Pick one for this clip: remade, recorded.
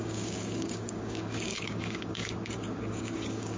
remade